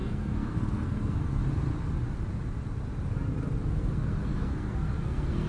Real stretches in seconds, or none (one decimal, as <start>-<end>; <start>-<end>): 1.4-3.7